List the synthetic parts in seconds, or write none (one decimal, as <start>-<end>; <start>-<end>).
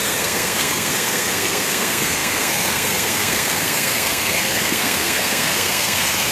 0.0-6.3